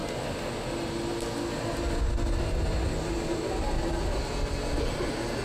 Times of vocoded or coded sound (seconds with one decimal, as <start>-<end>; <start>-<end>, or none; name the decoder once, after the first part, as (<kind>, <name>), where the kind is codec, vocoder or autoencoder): none